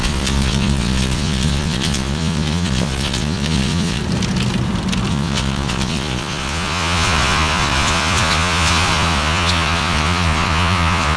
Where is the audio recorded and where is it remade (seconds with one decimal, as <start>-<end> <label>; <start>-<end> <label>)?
0.0-4.0 remade; 4.0-5.1 recorded; 5.1-11.2 remade